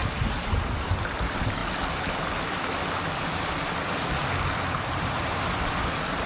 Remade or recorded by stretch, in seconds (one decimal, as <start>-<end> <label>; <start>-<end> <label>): 0.0-1.6 recorded; 1.6-5.4 remade; 5.4-6.3 recorded